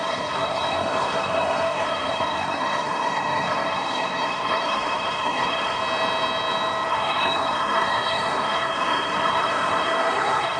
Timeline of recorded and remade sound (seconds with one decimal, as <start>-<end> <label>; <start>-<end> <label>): 0.0-5.8 remade; 5.8-6.9 recorded; 6.9-10.6 remade